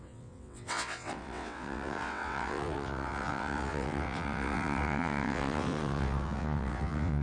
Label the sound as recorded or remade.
remade